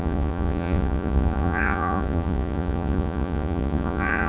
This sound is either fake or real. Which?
fake